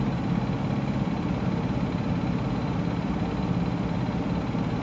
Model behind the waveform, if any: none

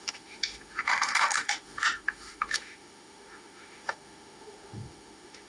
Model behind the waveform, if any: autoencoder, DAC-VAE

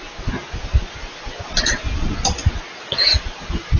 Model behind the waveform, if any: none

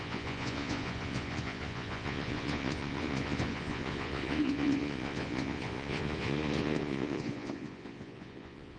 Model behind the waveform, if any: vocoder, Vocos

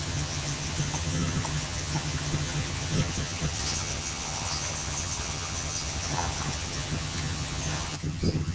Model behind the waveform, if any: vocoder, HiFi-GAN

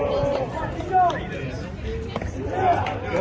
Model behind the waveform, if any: vocoder, BigVGAN v2